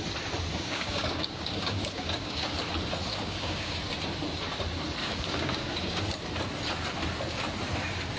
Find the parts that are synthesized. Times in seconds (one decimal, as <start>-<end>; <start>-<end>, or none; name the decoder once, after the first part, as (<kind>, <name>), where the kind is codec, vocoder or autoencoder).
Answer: 0.5-2.5 (codec, DAC); 3.1-3.8; 5.0-6.0